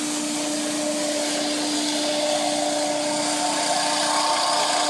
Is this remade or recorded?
recorded